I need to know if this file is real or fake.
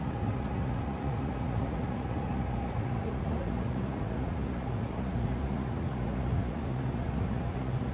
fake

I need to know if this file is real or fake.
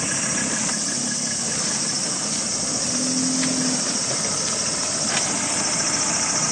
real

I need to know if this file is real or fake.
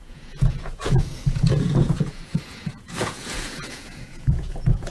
fake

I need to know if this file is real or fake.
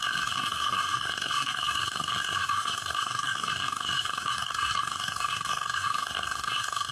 fake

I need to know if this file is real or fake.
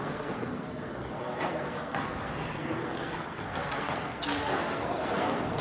fake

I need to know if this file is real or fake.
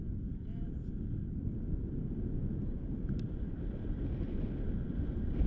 real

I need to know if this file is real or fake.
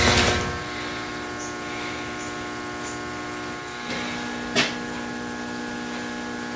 real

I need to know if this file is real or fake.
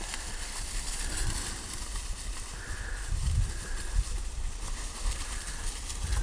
real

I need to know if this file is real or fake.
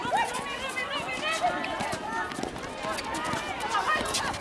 real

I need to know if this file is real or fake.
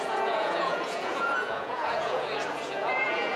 fake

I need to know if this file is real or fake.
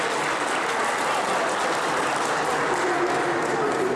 real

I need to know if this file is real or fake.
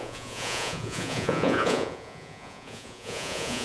fake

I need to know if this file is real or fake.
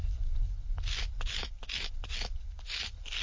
real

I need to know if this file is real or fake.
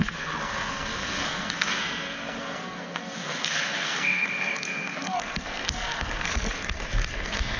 fake